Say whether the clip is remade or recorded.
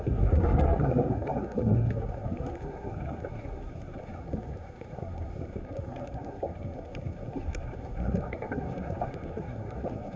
remade